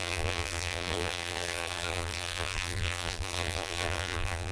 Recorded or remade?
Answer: remade